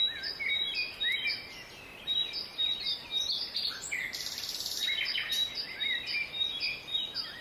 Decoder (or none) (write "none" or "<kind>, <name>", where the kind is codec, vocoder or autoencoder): none